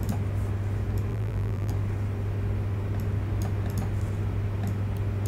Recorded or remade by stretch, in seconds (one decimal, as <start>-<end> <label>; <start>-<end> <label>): 0.0-1.1 recorded; 1.1-1.7 remade; 1.7-5.3 recorded